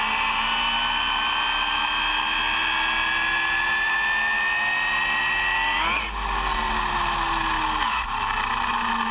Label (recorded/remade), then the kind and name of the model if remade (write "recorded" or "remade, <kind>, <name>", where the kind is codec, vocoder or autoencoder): recorded